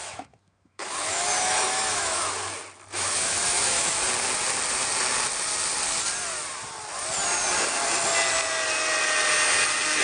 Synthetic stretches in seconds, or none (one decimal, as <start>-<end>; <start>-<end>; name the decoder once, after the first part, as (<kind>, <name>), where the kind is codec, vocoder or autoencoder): 0.0-2.3 (autoencoder, DAC-VAE); 2.9-4.1